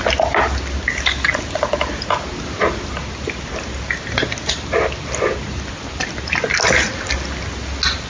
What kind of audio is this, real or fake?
real